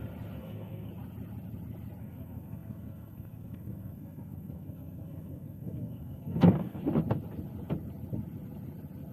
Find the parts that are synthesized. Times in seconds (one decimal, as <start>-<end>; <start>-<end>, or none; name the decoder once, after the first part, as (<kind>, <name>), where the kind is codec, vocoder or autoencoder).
0.4-0.9 (codec, SNAC); 2.0-6.8